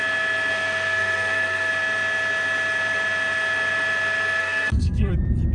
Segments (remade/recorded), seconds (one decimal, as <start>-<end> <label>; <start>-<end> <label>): 0.0-0.5 recorded; 0.5-1.7 remade; 1.7-4.4 recorded; 4.4-5.1 remade; 5.1-5.5 recorded